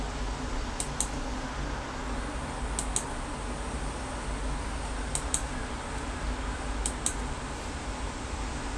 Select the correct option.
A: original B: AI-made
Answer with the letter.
A